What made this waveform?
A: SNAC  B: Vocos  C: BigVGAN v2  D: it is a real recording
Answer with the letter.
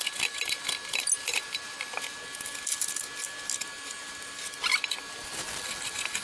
D